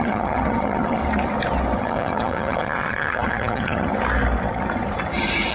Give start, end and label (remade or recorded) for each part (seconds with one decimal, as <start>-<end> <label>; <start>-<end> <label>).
0.0-1.0 remade; 1.0-1.8 recorded; 1.8-3.9 remade; 3.9-5.5 recorded